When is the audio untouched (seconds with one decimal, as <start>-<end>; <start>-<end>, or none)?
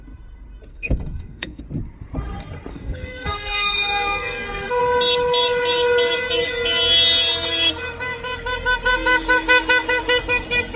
0.0-0.7; 1.6-2.7; 4.8-10.8